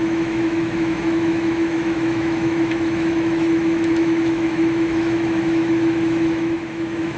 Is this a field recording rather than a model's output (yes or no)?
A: no